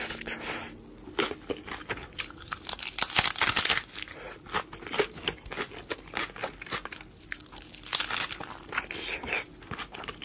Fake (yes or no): no